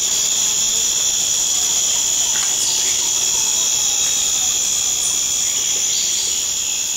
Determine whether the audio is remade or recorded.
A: recorded